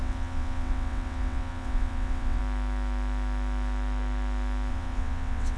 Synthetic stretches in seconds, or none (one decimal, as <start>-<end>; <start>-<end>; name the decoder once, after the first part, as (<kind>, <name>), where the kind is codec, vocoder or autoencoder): 0.0-2.4 (vocoder, WaveNeXt); 4.7-5.6